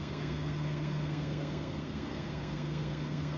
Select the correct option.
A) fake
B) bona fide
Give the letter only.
A